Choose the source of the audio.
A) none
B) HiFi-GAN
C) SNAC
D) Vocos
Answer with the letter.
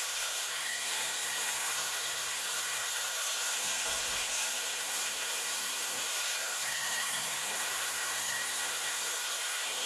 C